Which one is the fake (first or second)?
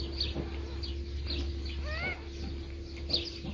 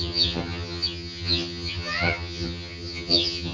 second